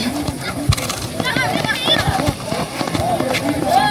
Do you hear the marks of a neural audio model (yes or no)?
yes